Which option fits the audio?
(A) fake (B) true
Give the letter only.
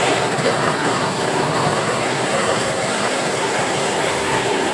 A